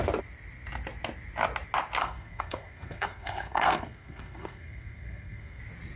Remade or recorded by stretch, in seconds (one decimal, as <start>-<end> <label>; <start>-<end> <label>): 0.0-2.0 recorded; 2.0-5.6 remade; 5.6-6.0 recorded